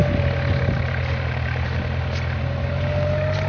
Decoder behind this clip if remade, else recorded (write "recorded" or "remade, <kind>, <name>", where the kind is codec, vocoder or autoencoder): recorded